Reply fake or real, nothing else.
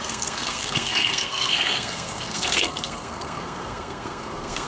fake